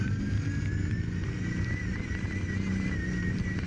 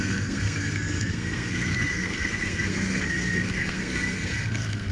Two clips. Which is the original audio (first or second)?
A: first